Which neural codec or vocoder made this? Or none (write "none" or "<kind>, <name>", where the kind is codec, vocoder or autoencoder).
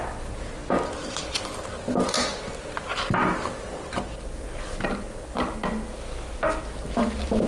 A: none